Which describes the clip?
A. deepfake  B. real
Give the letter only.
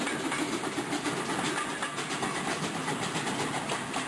B